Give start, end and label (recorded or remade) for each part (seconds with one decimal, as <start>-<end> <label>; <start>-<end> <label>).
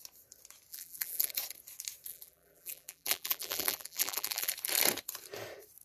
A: 0.0-0.7 recorded; 0.7-1.3 remade; 1.3-2.1 recorded; 2.1-4.5 remade; 4.5-5.8 recorded